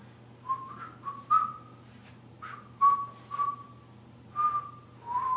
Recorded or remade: recorded